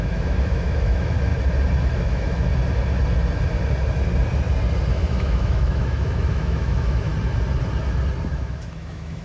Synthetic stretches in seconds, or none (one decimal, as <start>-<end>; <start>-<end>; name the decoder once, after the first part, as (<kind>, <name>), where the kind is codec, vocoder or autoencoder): 0.0-1.3 (autoencoder, DAC-VAE); 2.0-2.5; 4.9-7.1; 8.3-9.2